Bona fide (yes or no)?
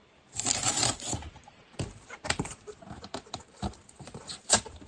no